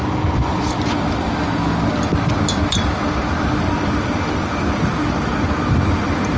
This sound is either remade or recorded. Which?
recorded